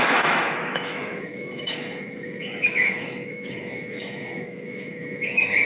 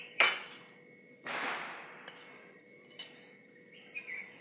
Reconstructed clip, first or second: first